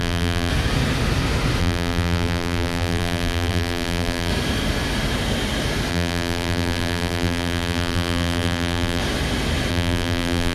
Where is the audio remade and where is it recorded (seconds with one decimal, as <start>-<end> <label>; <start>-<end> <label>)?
0.0-0.5 remade; 0.5-1.6 recorded; 1.6-4.3 remade; 4.3-5.9 recorded; 5.9-9.0 remade; 9.0-9.7 recorded; 9.7-10.5 remade